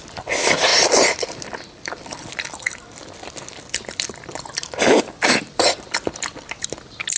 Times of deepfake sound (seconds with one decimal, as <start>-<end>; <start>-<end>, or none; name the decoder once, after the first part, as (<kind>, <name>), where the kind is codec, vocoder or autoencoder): none